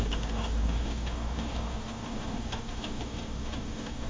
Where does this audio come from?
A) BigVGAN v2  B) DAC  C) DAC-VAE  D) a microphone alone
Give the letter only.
B